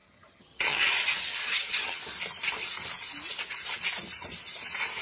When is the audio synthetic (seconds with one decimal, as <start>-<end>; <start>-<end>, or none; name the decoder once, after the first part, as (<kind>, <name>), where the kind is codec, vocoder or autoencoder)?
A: 0.0-0.9 (vocoder, HiFi-GAN); 1.3-2.0